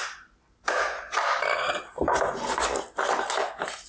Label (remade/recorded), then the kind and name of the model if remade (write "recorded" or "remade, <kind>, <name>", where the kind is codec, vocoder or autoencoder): recorded